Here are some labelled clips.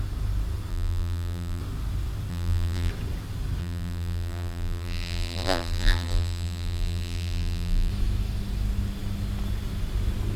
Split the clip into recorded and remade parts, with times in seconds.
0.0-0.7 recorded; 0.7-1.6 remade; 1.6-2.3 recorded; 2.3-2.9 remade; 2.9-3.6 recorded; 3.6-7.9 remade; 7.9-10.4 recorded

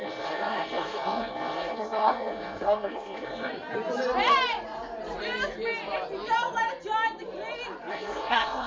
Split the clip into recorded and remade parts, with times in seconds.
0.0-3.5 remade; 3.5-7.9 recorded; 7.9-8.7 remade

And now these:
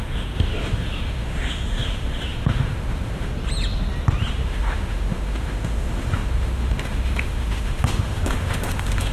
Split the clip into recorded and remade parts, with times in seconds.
0.0-3.3 remade; 3.3-4.3 recorded; 4.3-9.1 remade